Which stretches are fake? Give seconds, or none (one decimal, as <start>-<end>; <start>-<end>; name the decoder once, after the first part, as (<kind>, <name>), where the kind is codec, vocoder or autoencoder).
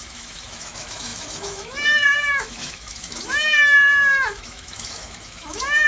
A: 0.0-5.9 (autoencoder, DAC-VAE)